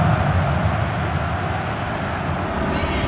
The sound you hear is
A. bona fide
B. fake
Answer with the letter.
A